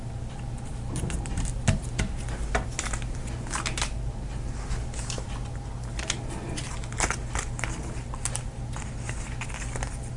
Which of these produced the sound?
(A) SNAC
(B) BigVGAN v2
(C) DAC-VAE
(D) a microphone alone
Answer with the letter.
D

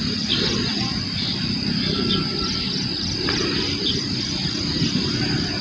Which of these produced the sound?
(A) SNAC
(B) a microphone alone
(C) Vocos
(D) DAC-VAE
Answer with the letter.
B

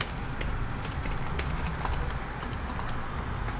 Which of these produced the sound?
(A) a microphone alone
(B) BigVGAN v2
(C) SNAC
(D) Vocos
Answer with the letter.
A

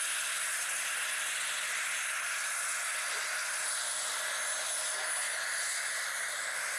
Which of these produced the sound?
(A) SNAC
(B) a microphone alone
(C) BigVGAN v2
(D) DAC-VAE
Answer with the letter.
B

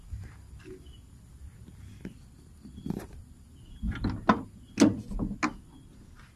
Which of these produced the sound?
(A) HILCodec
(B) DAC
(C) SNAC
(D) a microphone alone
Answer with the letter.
D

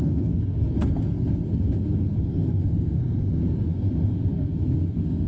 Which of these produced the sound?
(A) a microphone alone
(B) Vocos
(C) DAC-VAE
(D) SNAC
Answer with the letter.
D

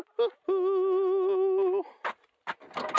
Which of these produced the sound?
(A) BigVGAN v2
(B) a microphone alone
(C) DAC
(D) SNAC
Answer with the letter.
B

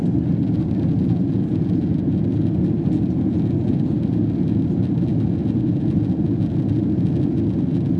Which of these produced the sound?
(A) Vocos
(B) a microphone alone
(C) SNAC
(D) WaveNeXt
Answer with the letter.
B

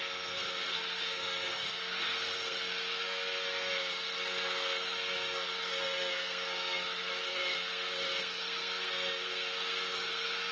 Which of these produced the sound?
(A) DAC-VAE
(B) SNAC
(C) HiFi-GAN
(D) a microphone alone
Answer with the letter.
B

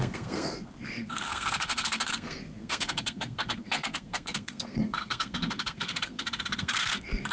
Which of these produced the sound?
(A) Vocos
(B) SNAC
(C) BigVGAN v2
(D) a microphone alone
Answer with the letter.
B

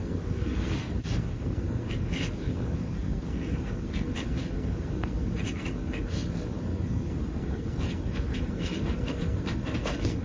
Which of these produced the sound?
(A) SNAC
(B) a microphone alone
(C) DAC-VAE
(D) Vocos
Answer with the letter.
A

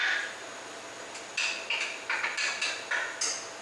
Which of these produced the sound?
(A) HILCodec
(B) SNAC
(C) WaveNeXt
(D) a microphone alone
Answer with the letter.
D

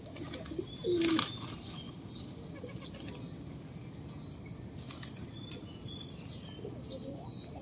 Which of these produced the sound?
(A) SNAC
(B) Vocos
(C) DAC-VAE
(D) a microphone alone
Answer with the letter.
D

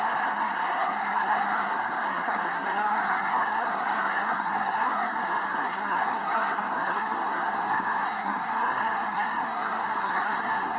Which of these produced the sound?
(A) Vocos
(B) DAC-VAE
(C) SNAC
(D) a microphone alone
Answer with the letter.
C